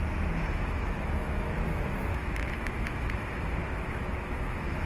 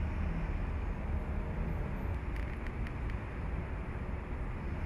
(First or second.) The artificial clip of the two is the first